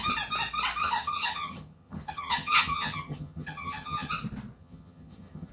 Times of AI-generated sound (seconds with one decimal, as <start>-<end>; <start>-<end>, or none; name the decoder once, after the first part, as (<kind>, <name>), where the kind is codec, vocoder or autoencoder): 0.8-4.1 (vocoder, HiFi-GAN); 4.6-5.5